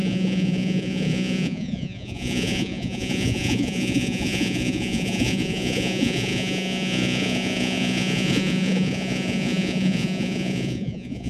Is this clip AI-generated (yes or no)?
yes